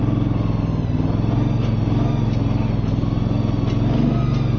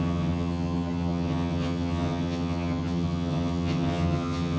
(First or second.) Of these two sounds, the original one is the first